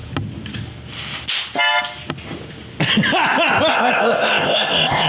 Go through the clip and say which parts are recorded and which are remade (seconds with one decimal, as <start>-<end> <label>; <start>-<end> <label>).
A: 0.0-3.7 recorded; 3.7-5.1 remade